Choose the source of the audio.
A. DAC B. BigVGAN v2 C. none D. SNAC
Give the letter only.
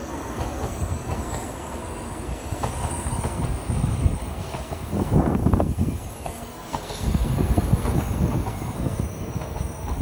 D